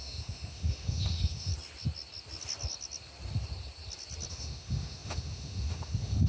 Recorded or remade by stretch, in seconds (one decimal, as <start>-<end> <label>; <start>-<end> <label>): 0.0-1.5 remade; 1.5-4.3 recorded; 4.3-6.3 remade